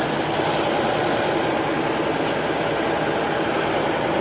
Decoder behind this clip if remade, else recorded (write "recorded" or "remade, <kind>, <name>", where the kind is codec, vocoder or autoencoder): recorded